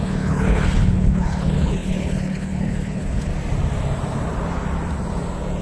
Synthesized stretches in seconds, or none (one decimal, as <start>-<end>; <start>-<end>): 0.0-3.3